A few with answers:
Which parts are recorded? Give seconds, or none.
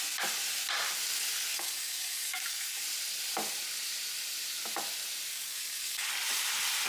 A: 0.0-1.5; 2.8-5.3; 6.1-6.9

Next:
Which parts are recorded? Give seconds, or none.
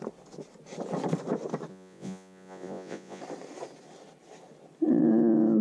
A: 0.0-1.7; 3.2-5.6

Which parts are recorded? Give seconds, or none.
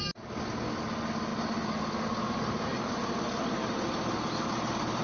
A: 0.0-5.0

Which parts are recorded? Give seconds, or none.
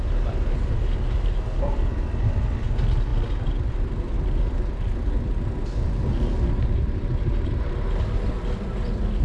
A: 0.0-9.2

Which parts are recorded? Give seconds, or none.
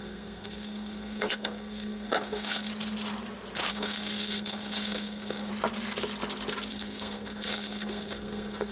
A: 2.7-3.7; 5.5-6.7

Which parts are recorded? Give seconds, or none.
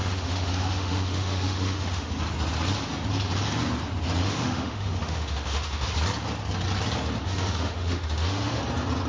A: 2.1-4.2; 5.9-7.2; 8.6-9.1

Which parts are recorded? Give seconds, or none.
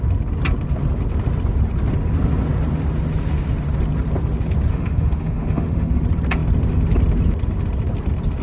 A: 0.0-4.7; 6.0-8.4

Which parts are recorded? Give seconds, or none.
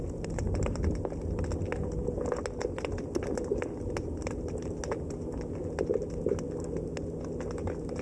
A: 0.8-8.0